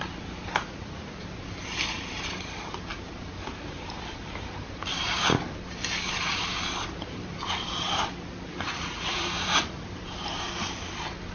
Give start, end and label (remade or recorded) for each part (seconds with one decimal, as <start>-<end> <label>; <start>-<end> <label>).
0.0-0.6 recorded; 0.6-1.2 remade; 1.2-8.5 recorded; 8.5-9.8 remade; 9.8-11.3 recorded

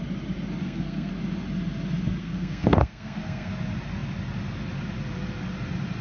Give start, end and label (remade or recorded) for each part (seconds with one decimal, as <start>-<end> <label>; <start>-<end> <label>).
0.0-0.6 recorded; 0.6-1.1 remade; 1.1-2.2 recorded; 2.2-3.5 remade; 3.5-6.0 recorded

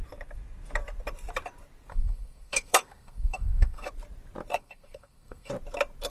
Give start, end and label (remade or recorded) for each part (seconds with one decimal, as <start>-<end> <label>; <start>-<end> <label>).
0.0-1.9 recorded; 1.9-3.9 remade; 3.9-4.5 recorded; 4.5-5.5 remade; 5.5-6.1 recorded

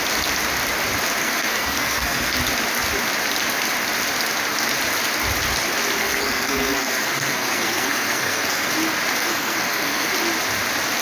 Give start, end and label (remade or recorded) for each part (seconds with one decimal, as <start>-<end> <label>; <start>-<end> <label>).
0.0-1.2 recorded; 1.2-2.3 remade; 2.3-6.0 recorded; 6.0-8.7 remade; 8.7-9.2 recorded; 9.2-10.1 remade; 10.1-11.0 recorded

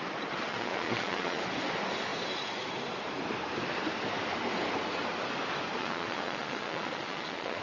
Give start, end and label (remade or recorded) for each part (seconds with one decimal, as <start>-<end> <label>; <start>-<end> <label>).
0.0-0.5 recorded; 0.5-1.4 remade; 1.4-5.8 recorded; 5.8-7.6 remade

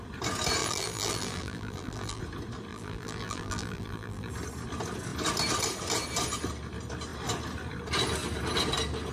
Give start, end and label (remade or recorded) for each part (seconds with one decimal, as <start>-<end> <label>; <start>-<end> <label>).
0.0-0.6 recorded; 0.6-2.2 remade; 2.2-2.7 recorded; 2.7-4.3 remade; 4.3-9.1 recorded